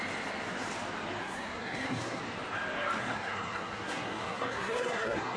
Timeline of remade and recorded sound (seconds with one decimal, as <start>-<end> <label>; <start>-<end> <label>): 0.0-1.2 recorded; 1.2-2.2 remade; 2.2-3.0 recorded; 3.0-5.4 remade